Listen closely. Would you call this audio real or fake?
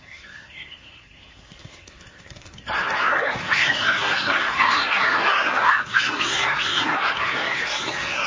fake